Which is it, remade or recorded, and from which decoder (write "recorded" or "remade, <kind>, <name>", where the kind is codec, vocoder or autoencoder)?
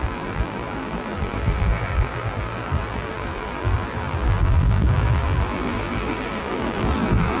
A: remade, vocoder, BigVGAN v2